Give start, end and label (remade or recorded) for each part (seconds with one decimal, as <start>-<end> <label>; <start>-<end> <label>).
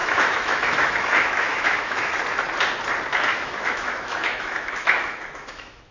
0.0-2.2 remade; 2.2-3.3 recorded; 3.3-5.9 remade